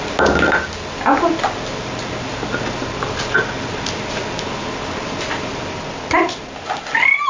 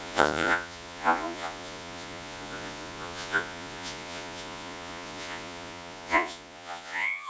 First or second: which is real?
first